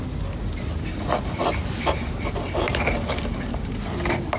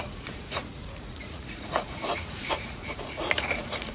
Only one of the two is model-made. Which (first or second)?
second